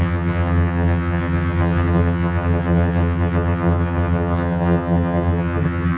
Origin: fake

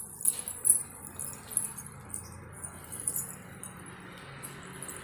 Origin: real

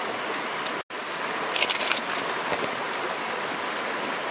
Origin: real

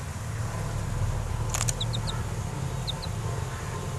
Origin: real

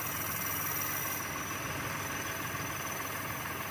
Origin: real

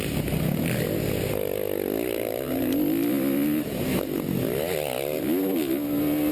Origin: real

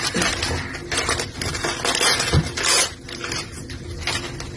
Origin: real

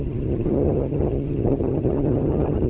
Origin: fake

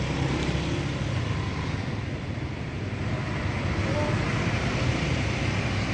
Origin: real